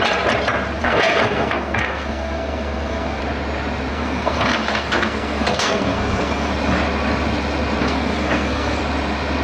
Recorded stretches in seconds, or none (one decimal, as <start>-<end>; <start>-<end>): 0.0-0.8; 3.2-3.9; 6.5-7.8; 8.8-9.4